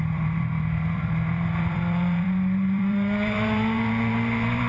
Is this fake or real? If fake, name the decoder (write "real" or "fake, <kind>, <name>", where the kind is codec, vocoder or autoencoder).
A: fake, vocoder, BigVGAN v2